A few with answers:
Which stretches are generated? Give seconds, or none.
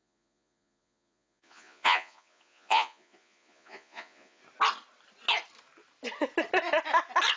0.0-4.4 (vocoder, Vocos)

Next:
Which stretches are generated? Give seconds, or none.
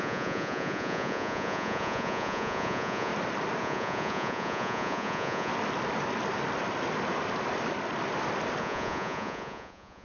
0.0-3.1 (vocoder, Vocos); 3.6-5.5; 8.6-10.0